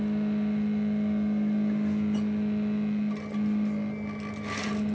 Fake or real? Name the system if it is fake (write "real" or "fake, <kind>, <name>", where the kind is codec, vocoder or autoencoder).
real